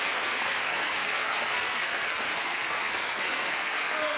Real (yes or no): no